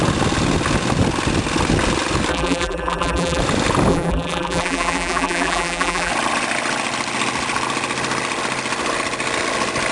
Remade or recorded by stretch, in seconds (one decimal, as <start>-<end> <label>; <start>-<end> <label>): 0.0-2.3 recorded; 2.3-3.4 remade; 3.4-3.9 recorded; 3.9-6.1 remade; 6.1-9.9 recorded